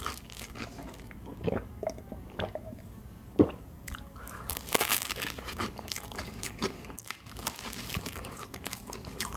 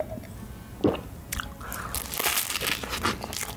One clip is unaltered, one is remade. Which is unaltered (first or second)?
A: second